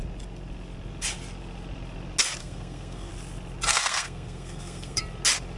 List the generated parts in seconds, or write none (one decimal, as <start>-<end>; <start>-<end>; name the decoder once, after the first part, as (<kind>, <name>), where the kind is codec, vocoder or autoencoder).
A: 2.4-3.1 (codec, SNAC); 3.7-5.0